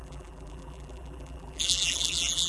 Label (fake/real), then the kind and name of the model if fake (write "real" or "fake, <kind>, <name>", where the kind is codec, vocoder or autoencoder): fake, vocoder, BigVGAN v2